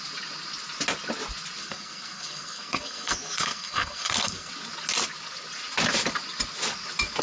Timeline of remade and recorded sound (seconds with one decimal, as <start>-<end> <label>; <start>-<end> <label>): 0.0-1.6 recorded; 1.6-4.5 remade; 4.5-7.2 recorded